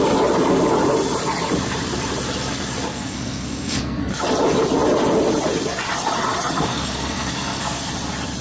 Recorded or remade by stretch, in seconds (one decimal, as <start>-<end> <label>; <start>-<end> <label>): 0.0-2.9 recorded; 2.9-4.1 remade; 4.1-6.7 recorded; 6.7-7.9 remade; 7.9-8.4 recorded